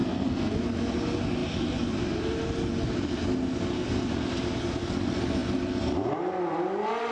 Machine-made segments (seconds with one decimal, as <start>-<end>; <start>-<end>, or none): 0.0-0.6